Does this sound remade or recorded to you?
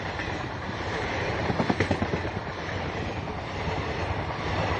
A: remade